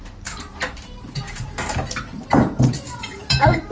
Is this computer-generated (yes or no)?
yes